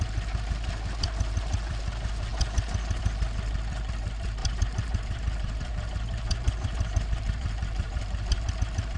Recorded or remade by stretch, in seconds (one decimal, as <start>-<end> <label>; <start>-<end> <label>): 0.0-4.4 recorded; 4.4-8.5 remade; 8.5-9.0 recorded